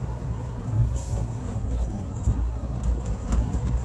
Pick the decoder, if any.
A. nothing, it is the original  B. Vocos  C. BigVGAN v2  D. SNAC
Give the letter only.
D